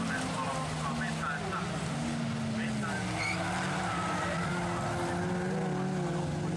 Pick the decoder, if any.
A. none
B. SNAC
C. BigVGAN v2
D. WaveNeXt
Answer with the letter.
A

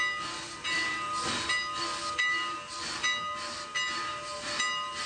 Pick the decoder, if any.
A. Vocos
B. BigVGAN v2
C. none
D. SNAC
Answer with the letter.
C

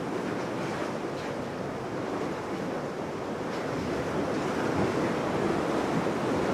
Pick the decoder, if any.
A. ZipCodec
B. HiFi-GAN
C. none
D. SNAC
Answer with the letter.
C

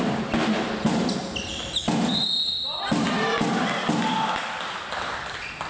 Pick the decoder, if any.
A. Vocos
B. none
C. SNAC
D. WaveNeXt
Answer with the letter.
B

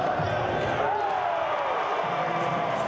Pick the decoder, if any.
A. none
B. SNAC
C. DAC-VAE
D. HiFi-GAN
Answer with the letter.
A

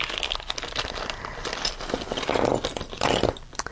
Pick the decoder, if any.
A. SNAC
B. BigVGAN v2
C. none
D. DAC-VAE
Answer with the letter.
C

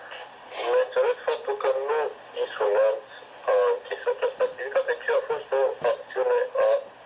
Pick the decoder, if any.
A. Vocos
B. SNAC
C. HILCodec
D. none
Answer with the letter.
D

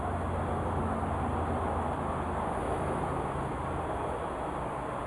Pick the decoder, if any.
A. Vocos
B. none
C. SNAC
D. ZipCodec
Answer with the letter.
B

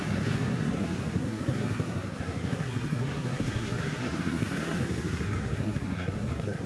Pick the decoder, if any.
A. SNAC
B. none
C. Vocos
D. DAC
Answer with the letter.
A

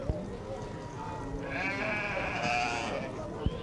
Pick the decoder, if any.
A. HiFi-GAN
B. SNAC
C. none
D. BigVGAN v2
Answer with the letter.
C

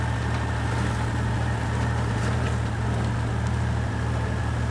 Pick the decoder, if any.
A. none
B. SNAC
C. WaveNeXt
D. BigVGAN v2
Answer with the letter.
A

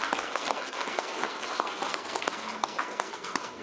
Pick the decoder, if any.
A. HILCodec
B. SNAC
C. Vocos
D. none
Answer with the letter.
B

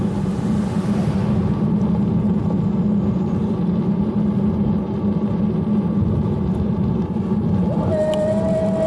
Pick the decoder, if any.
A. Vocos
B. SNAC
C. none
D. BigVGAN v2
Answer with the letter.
C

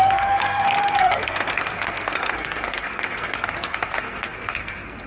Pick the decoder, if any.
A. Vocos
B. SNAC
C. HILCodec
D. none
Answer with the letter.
B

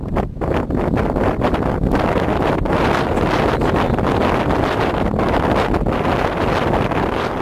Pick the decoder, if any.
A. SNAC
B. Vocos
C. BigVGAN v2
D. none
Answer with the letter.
D